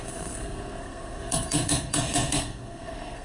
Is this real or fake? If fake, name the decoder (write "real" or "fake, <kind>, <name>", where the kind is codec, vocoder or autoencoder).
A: fake, codec, SNAC